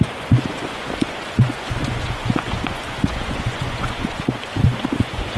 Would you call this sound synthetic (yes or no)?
yes